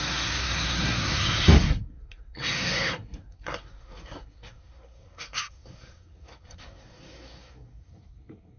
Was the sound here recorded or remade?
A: remade